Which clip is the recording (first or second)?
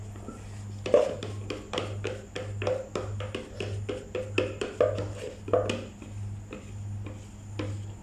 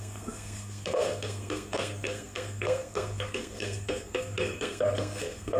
first